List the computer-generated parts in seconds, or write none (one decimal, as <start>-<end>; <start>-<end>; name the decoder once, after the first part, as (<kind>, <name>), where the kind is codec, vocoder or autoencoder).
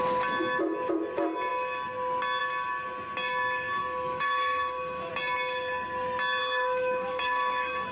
3.8-5.1 (autoencoder, DAC-VAE); 6.4-7.9